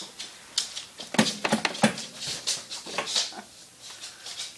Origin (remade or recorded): recorded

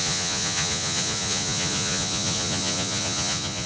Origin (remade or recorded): remade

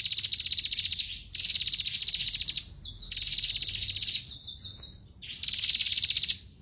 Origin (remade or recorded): recorded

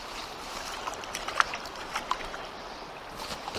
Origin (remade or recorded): remade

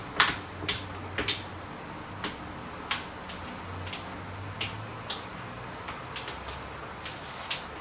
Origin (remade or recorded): recorded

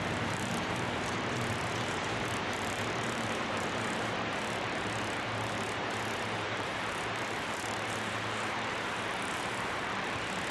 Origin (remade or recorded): remade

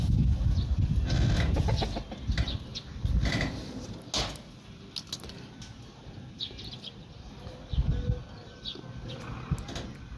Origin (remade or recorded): recorded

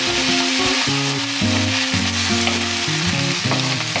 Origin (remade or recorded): recorded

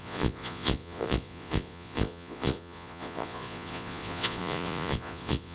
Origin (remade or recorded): remade